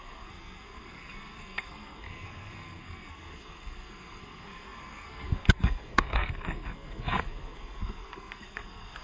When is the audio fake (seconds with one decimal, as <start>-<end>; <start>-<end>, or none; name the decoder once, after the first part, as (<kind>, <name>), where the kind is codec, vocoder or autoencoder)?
0.0-9.0 (codec, SNAC)